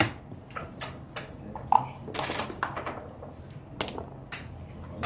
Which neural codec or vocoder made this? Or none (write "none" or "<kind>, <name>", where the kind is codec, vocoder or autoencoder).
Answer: none